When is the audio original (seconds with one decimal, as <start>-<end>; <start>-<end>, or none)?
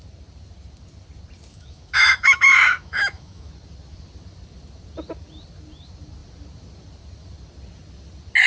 0.0-1.5; 3.5-8.5